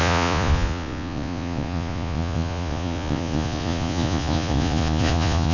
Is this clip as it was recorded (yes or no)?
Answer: no